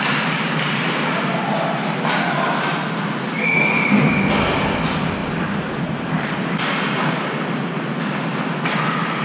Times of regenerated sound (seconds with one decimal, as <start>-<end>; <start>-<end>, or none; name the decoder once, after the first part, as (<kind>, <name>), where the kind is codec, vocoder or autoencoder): 3.4-4.2 (codec, SNAC)